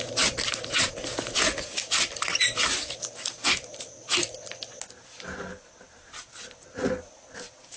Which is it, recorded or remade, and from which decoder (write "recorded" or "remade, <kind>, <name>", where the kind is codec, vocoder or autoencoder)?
recorded